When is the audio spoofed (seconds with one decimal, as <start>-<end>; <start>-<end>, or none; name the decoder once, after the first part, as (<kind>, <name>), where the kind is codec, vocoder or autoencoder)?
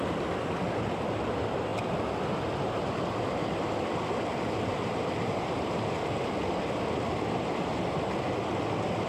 none